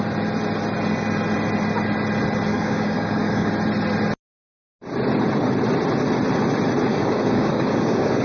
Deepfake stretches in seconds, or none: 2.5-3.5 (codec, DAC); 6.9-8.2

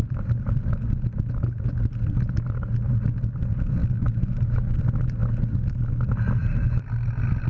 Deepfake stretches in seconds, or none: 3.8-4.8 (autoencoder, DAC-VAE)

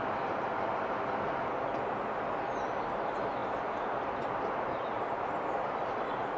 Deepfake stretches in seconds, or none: 3.4-5.8 (vocoder, BigVGAN v2)

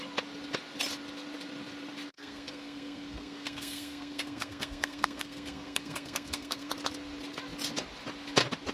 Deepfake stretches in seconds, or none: 2.1-6.7 (codec, SNAC)

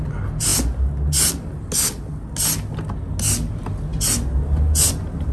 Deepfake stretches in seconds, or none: none